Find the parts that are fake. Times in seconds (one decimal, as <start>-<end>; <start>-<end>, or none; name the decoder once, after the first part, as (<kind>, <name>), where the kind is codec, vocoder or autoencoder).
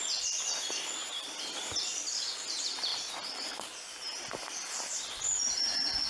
0.0-6.1 (vocoder, BigVGAN v2)